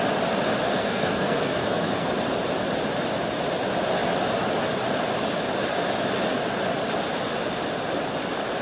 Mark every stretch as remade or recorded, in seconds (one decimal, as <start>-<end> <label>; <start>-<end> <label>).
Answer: 0.0-0.8 recorded; 0.8-2.1 remade; 2.1-8.6 recorded